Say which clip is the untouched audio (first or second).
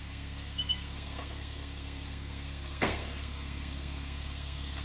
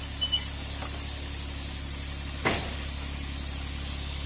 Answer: second